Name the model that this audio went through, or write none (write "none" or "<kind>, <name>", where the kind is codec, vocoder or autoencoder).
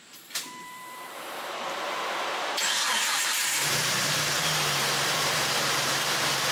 vocoder, BigVGAN v2